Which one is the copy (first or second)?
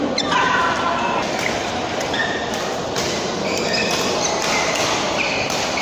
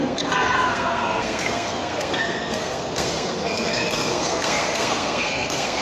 second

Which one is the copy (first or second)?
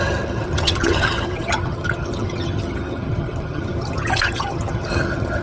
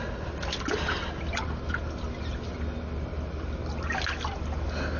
first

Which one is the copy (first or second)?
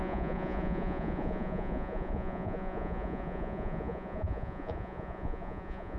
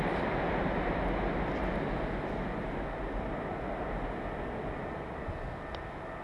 first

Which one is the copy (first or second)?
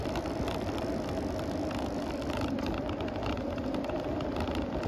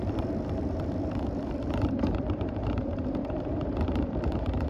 second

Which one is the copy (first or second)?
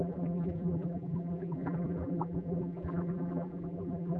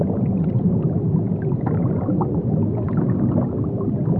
first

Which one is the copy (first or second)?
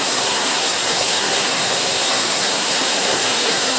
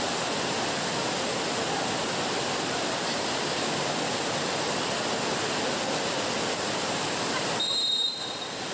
first